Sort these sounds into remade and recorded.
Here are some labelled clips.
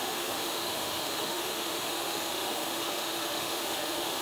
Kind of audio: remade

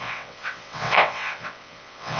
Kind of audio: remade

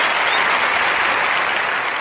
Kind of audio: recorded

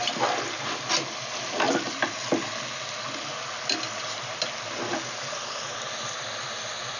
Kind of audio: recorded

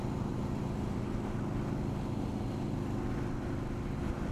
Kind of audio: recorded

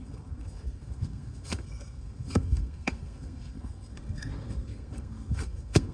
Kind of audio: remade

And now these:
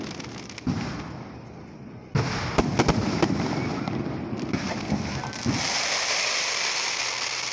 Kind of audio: recorded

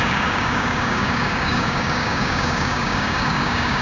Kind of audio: remade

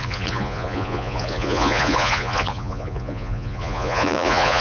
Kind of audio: remade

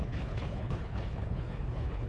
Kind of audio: remade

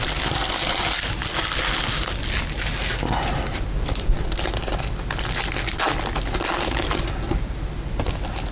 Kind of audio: recorded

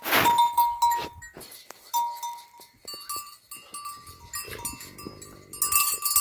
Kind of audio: recorded